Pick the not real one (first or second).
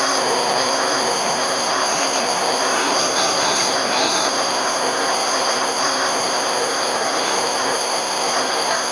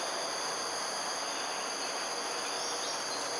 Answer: first